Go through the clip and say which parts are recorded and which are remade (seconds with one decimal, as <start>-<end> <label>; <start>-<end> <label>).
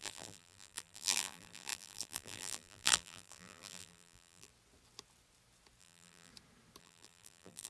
0.0-4.5 remade; 4.5-5.8 recorded; 5.8-6.3 remade; 6.3-6.8 recorded; 6.8-7.7 remade